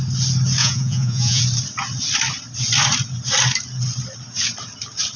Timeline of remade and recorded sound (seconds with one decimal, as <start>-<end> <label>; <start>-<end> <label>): 0.0-0.6 recorded; 0.6-1.4 remade; 1.4-5.2 recorded